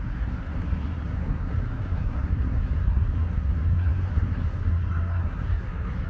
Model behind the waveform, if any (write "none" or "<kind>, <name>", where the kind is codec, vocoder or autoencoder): codec, SNAC